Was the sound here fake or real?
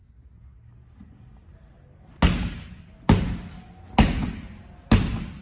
real